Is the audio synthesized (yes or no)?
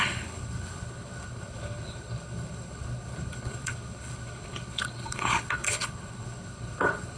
yes